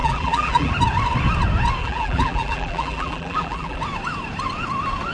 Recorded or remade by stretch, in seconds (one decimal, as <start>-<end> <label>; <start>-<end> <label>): 0.0-0.7 remade; 0.7-1.8 recorded; 1.8-3.8 remade; 3.8-5.1 recorded